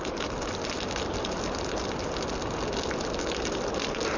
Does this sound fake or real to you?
real